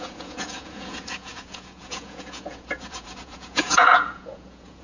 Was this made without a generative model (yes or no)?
no